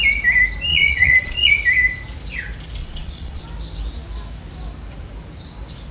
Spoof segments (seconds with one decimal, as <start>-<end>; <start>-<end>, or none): 0.7-1.5; 2.8-3.4